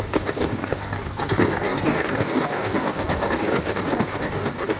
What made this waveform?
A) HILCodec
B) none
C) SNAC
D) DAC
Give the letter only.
D